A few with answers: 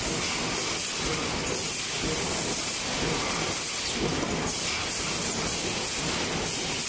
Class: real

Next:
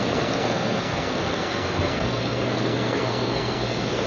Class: fake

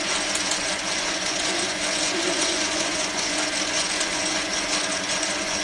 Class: fake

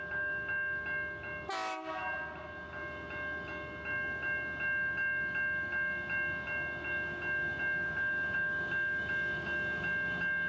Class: real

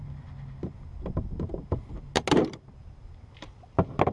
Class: real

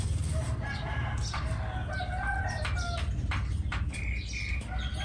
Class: real